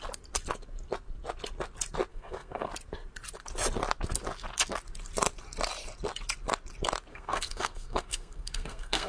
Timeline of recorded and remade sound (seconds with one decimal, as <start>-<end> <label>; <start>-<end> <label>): 0.0-2.1 recorded; 2.1-2.7 remade; 2.7-7.1 recorded; 7.1-9.1 remade